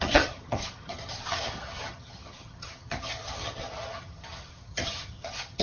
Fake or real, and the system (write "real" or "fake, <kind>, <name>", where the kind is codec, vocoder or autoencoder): fake, vocoder, HiFi-GAN